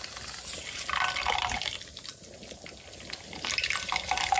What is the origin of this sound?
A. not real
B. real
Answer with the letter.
B